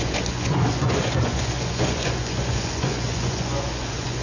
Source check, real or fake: fake